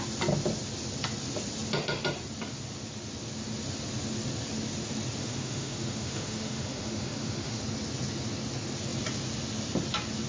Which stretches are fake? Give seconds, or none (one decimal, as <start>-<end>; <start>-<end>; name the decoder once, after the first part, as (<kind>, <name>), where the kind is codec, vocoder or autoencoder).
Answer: 5.2-7.6 (autoencoder, DAC-VAE)